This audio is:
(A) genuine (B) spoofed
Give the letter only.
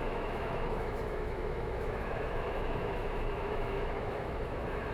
B